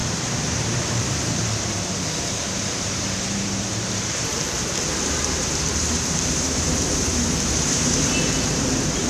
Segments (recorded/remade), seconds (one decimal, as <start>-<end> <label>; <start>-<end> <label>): 0.0-9.1 remade